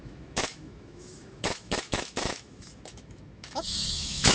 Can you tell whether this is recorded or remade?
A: remade